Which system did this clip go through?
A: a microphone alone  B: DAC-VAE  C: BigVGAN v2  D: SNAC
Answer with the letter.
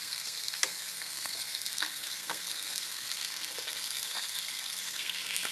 D